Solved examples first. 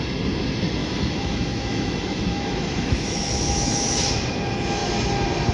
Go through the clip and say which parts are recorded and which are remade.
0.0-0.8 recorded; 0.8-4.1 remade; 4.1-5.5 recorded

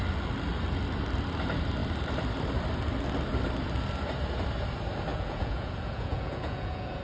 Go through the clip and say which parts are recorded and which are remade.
0.0-5.1 recorded; 5.1-7.0 remade

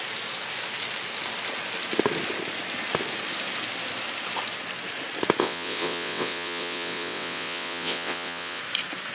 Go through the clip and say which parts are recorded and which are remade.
0.0-5.4 recorded; 5.4-8.6 remade; 8.6-9.1 recorded

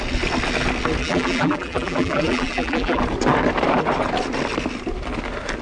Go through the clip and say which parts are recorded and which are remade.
0.0-1.0 recorded; 1.0-3.0 remade; 3.0-5.6 recorded

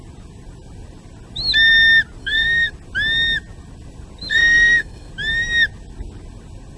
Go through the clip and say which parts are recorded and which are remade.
0.0-2.2 recorded; 2.2-2.7 remade; 2.7-4.3 recorded; 4.3-5.1 remade; 5.1-6.8 recorded

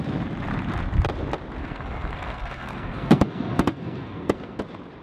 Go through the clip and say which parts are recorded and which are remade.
0.0-1.6 recorded; 1.6-4.6 remade; 4.6-5.0 recorded

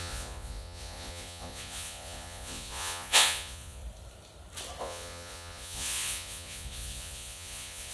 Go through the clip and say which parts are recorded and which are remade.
0.0-3.8 remade; 3.8-4.8 recorded; 4.8-7.9 remade

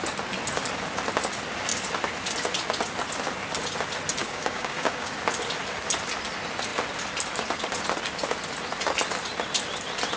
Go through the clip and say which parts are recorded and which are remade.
0.0-4.2 recorded; 4.2-5.1 remade; 5.1-10.2 recorded